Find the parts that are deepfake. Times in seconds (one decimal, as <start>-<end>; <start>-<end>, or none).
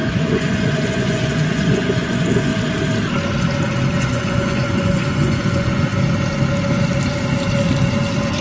0.0-2.5; 4.0-5.9